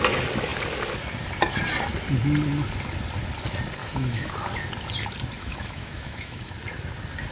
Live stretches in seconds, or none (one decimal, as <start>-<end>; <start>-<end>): 0.0-3.8; 4.3-5.4; 6.5-7.3